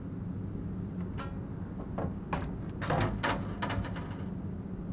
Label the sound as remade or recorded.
recorded